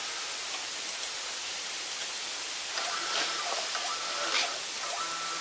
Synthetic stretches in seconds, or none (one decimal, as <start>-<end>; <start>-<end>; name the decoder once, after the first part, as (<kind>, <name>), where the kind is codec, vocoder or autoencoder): 1.4-4.6 (vocoder, BigVGAN v2)